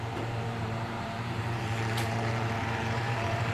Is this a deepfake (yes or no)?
yes